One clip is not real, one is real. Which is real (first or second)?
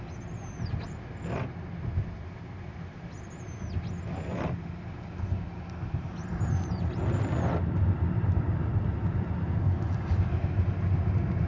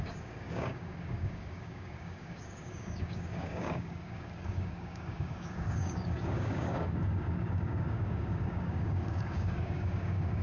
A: first